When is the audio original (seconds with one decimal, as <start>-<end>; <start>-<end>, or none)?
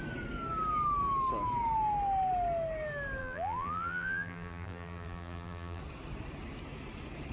0.0-3.2; 5.8-7.3